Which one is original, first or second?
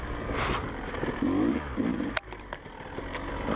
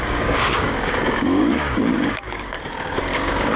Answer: first